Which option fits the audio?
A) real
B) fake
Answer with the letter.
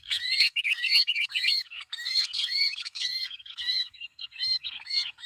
B